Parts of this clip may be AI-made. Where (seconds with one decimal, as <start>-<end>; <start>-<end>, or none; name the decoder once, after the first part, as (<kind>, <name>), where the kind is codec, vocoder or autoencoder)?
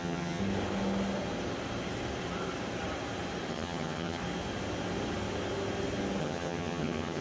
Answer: 0.0-0.4 (vocoder, HiFi-GAN); 3.5-4.2; 6.2-7.2